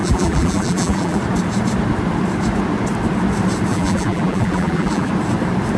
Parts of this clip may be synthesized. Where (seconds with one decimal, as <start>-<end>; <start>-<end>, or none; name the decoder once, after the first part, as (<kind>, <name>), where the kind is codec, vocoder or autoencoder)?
0.0-1.2 (vocoder, BigVGAN v2); 3.7-5.1